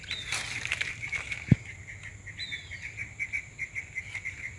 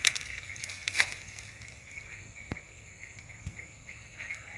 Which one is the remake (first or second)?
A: second